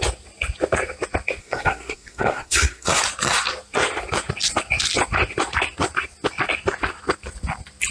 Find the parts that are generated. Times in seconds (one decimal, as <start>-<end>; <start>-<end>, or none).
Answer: 1.4-3.0